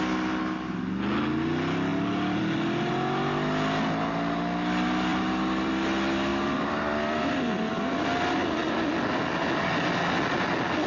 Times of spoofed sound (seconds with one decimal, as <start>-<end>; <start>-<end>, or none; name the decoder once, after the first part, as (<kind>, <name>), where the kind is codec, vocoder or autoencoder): 1.9-2.4 (vocoder, BigVGAN v2); 5.1-5.7; 6.3-7.3